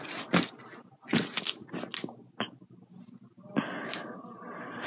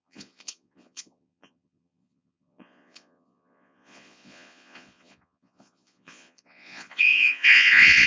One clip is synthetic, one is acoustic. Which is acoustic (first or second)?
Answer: first